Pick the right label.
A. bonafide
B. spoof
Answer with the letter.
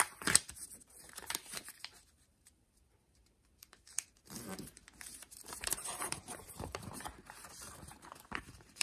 B